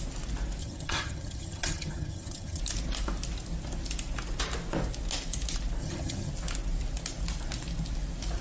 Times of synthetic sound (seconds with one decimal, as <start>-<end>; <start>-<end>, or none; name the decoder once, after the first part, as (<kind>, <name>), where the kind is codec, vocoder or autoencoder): 0.6-2.6 (vocoder, HiFi-GAN); 5.8-6.3

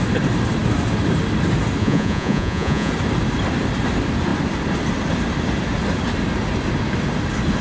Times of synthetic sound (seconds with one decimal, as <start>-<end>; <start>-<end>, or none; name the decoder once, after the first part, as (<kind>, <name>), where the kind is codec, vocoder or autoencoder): 1.8-2.9 (vocoder, Vocos)

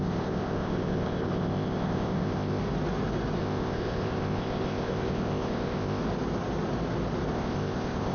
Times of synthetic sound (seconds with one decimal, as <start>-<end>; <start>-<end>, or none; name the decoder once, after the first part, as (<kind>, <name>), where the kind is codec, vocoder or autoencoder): 0.0-2.6 (codec, ZipCodec); 3.4-6.0; 7.3-8.1

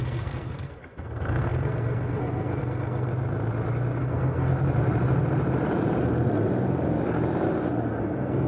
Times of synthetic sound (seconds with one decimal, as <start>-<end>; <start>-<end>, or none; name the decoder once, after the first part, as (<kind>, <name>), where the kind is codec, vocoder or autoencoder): 0.0-3.1 (codec, SNAC); 4.0-4.5; 8.0-8.5

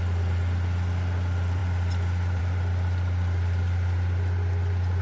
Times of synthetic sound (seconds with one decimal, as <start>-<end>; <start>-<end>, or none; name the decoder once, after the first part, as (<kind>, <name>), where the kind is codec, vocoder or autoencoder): none